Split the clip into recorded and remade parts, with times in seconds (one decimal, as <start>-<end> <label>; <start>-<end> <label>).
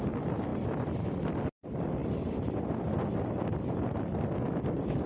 0.0-5.1 recorded